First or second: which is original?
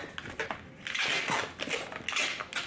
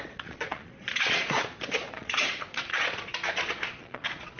first